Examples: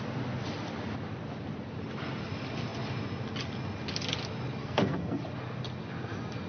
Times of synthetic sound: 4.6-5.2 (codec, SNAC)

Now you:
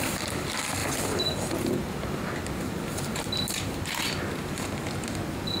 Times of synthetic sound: none

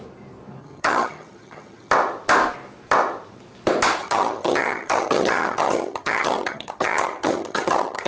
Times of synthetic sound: 0.6-1.9 (vocoder, HiFi-GAN); 4.0-8.1

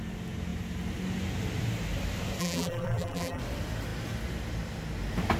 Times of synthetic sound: 2.4-3.4 (vocoder, BigVGAN v2)